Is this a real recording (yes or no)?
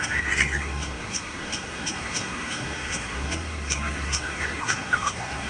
no